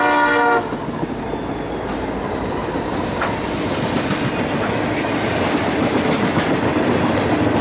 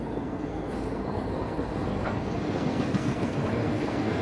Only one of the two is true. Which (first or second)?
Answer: first